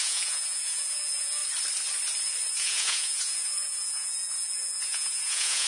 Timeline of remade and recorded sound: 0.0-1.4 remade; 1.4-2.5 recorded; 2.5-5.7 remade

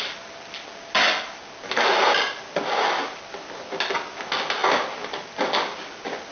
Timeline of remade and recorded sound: 0.0-6.3 recorded

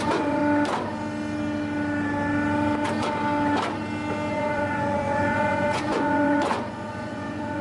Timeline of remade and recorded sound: 0.0-0.4 remade; 0.4-4.3 recorded; 4.3-7.6 remade

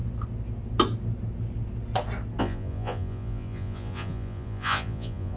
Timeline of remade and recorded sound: 0.0-2.4 recorded; 2.4-5.4 remade